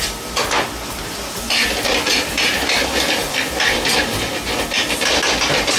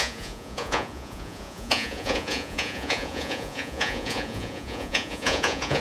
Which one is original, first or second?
first